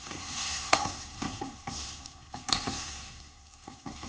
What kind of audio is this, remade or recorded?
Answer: remade